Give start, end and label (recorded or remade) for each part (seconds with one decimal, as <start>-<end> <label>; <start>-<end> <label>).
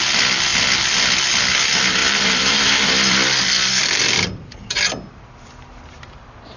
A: 0.0-2.0 recorded; 2.0-5.5 remade; 5.5-6.6 recorded